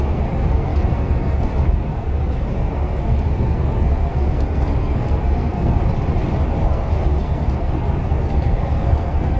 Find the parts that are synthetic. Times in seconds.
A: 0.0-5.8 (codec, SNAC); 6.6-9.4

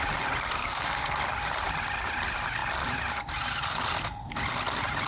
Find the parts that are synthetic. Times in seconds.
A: 0.6-1.2 (codec, SNAC)

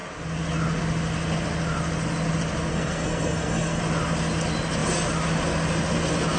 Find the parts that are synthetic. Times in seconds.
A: 2.7-3.8 (codec, SNAC)

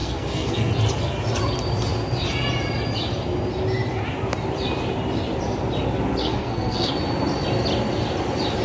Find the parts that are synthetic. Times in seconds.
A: 0.0-0.7 (codec, SNAC); 6.2-6.9

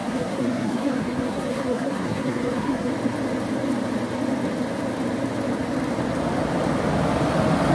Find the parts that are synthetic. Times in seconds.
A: 0.0-2.9 (codec, SNAC)

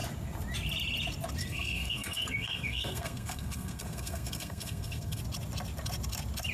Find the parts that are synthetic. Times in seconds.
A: 1.4-5.2 (codec, SNAC)

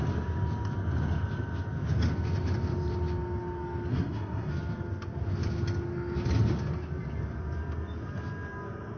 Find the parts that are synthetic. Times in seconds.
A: 3.9-4.5 (codec, SNAC)